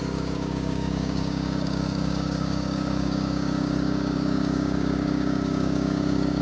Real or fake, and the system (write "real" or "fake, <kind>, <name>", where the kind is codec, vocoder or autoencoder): fake, codec, DAC